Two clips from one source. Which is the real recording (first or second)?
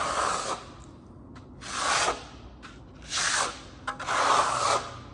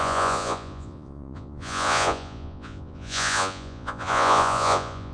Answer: first